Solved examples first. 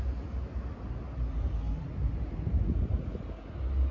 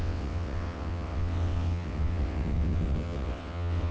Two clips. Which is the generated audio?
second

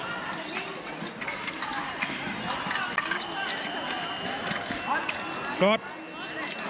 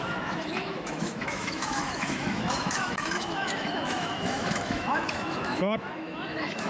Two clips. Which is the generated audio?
second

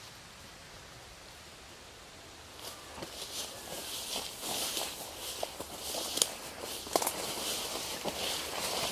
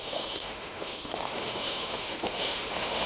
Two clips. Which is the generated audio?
second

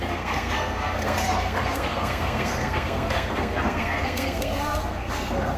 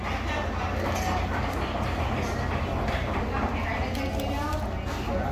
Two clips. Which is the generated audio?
first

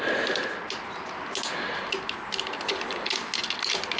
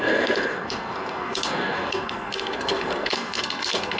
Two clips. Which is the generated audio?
second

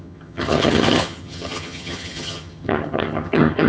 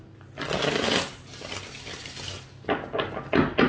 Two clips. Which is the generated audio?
first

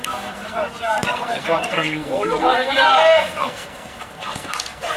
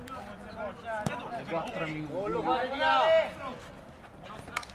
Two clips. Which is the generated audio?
first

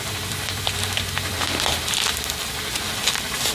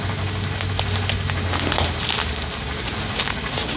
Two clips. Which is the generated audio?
first